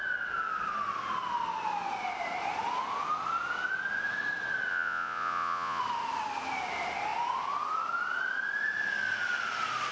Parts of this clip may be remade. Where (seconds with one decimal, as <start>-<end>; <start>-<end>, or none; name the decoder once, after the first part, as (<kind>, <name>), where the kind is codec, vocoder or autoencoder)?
4.7-5.8 (vocoder, Vocos)